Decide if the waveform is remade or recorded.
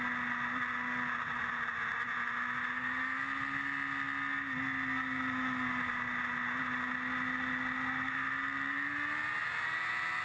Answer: recorded